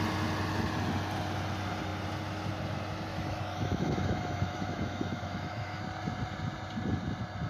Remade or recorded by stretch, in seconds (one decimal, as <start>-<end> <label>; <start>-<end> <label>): 0.0-3.1 recorded; 3.1-5.8 remade; 5.8-7.5 recorded